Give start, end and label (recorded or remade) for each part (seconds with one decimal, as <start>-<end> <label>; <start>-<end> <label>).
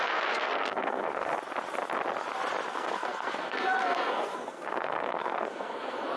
0.0-1.3 remade; 1.3-2.7 recorded; 2.7-6.2 remade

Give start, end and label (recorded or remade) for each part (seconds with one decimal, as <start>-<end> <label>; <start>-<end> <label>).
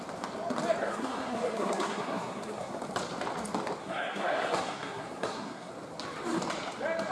0.0-0.8 recorded; 0.8-2.8 remade; 2.8-3.8 recorded; 3.8-5.7 remade; 5.7-7.1 recorded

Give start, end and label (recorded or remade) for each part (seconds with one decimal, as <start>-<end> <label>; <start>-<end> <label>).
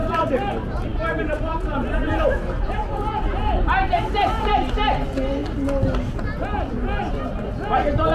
0.0-8.1 recorded